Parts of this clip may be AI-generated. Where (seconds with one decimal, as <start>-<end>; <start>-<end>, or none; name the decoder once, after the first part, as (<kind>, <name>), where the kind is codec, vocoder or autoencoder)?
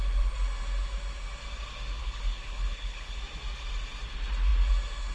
2.0-3.2 (codec, HILCodec)